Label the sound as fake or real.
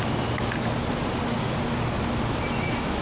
real